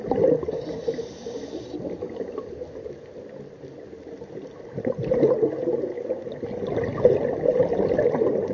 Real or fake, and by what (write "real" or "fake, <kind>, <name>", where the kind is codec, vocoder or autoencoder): real